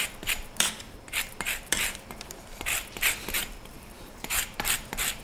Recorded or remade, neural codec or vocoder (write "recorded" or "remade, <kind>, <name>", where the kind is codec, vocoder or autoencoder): remade, vocoder, BigVGAN v2